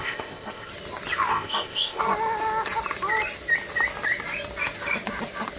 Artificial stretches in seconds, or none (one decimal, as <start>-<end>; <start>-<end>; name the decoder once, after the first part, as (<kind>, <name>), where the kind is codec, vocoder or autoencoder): 0.0-0.7 (codec, ZipCodec); 1.3-2.0